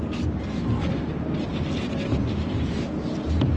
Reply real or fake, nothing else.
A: real